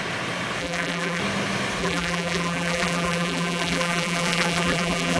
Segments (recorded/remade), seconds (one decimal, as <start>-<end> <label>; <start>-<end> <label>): 0.0-0.6 recorded; 0.6-1.2 remade; 1.2-1.8 recorded; 1.8-5.2 remade